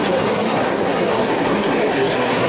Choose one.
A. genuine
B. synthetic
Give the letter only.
B